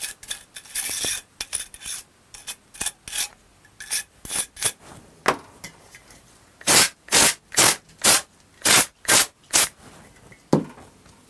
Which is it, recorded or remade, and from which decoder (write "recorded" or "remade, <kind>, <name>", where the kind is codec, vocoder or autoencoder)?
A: recorded